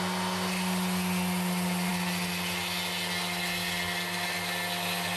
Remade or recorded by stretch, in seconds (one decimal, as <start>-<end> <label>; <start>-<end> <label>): 0.0-5.2 recorded